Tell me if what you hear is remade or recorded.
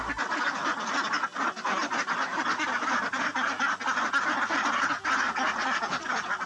recorded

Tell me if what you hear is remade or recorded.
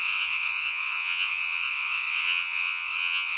remade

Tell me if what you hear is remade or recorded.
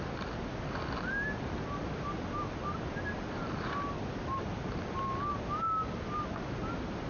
recorded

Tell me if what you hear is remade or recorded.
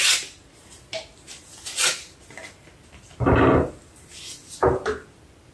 recorded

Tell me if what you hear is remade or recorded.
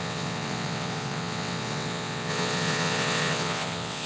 remade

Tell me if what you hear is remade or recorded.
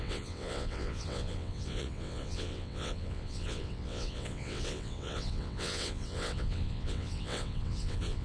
remade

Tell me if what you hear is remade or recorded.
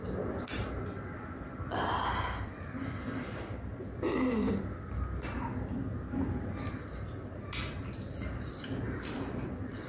recorded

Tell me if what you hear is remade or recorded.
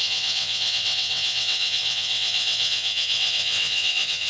remade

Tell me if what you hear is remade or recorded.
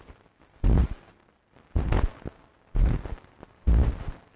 recorded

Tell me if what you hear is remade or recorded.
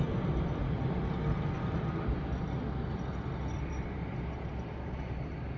recorded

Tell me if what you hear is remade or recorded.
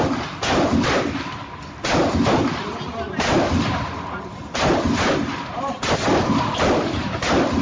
recorded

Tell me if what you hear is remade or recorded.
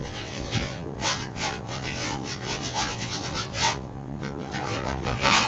remade